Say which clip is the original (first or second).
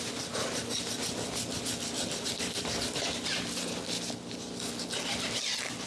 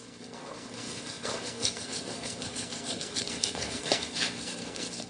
first